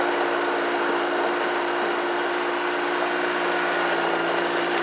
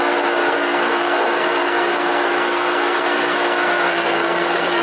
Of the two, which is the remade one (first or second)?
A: second